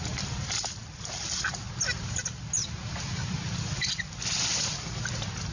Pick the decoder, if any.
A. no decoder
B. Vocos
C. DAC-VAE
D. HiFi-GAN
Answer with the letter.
A